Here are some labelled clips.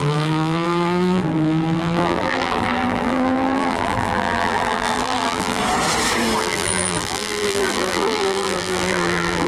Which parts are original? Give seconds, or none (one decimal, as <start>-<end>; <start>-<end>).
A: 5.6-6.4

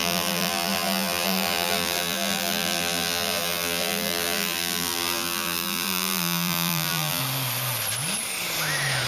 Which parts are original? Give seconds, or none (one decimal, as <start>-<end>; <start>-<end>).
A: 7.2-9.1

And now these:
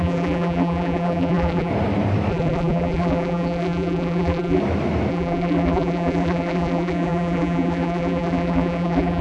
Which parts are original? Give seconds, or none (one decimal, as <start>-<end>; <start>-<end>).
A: 1.7-2.3; 4.6-5.1

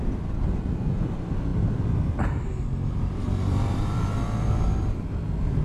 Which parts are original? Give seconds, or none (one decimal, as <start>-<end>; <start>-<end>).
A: 0.0-1.5; 4.9-5.6